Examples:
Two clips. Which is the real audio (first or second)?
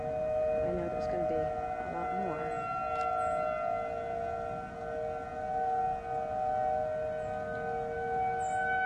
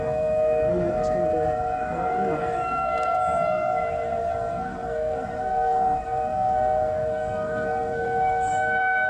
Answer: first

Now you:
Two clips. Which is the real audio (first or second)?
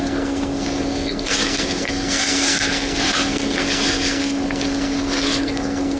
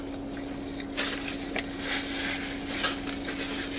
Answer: second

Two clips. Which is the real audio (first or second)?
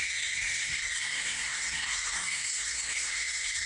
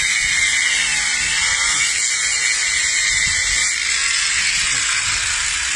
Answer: second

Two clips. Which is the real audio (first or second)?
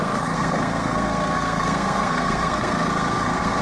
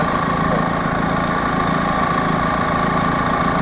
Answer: second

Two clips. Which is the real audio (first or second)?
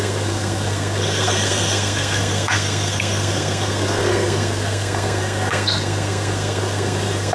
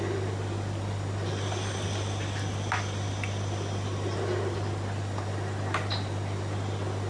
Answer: second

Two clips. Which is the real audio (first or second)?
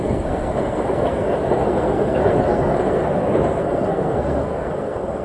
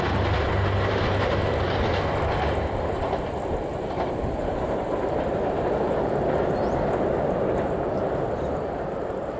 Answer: second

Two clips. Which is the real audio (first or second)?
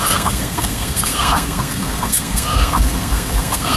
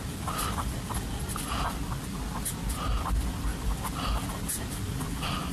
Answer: second